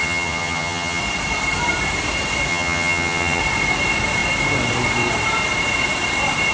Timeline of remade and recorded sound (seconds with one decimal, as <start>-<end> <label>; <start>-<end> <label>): 0.0-1.0 remade; 1.0-2.5 recorded; 2.5-3.4 remade; 3.4-6.5 recorded